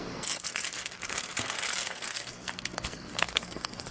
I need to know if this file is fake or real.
fake